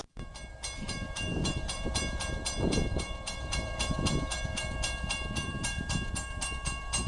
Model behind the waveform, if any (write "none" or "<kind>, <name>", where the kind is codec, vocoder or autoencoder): vocoder, BigVGAN v2